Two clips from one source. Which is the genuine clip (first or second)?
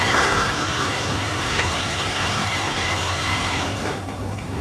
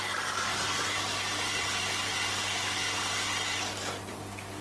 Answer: second